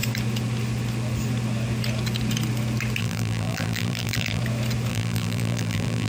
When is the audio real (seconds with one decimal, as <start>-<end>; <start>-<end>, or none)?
0.0-3.0; 4.4-4.9